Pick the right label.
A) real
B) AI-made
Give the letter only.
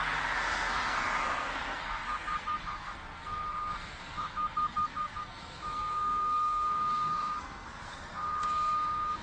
B